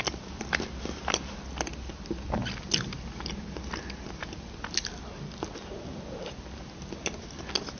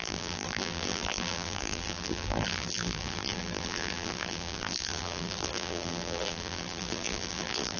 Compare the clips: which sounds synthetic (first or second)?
second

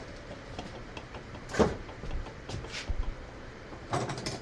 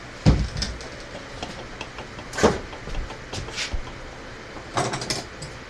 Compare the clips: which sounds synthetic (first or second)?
first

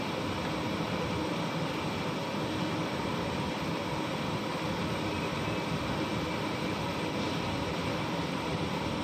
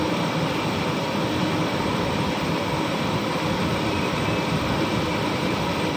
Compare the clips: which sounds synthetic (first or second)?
second